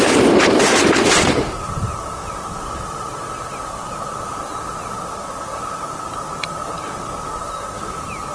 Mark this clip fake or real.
real